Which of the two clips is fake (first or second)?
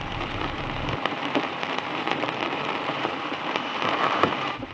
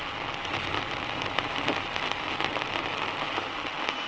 first